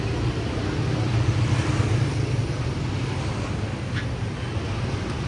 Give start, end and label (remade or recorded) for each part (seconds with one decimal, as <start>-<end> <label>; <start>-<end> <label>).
0.0-0.6 recorded; 0.6-3.8 remade; 3.8-5.3 recorded